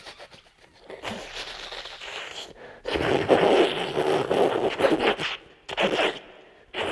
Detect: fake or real real